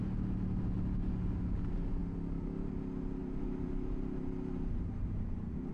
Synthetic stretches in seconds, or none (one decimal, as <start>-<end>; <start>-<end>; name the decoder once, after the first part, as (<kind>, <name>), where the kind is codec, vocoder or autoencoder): 3.2-5.7 (vocoder, BigVGAN v2)